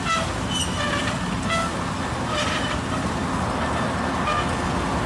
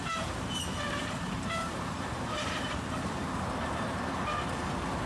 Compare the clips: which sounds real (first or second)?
first